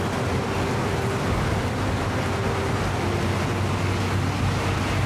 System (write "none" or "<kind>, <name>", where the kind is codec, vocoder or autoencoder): none